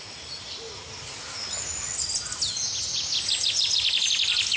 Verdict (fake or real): real